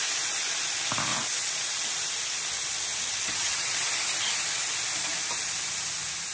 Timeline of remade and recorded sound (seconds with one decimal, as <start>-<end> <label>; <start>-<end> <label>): 0.0-1.1 recorded; 1.1-1.7 remade; 1.7-3.1 recorded; 3.1-3.9 remade; 3.9-6.3 recorded